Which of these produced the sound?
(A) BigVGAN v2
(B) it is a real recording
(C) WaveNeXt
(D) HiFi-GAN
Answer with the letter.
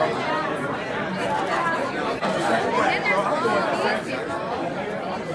B